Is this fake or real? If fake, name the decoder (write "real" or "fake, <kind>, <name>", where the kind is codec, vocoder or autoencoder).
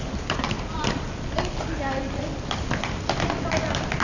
real